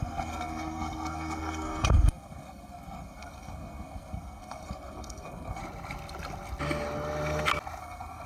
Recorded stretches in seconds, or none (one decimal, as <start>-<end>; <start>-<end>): 5.6-7.8